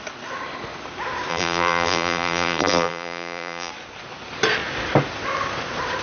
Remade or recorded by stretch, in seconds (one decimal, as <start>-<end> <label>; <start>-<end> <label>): 0.0-1.3 recorded; 1.3-3.7 remade; 3.7-6.0 recorded